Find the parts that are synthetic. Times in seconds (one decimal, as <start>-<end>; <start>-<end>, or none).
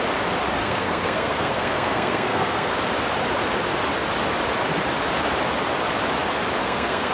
0.6-2.7; 6.6-7.1